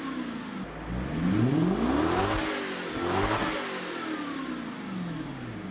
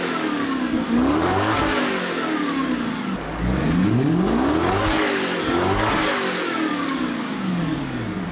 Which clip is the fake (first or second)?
second